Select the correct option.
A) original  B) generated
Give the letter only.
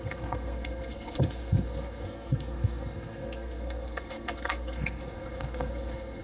B